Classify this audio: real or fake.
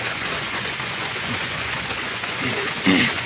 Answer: fake